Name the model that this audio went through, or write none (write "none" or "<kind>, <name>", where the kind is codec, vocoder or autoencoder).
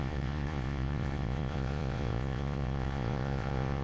vocoder, Vocos